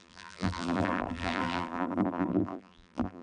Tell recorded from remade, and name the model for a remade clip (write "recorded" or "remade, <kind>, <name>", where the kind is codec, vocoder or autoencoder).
remade, vocoder, BigVGAN v2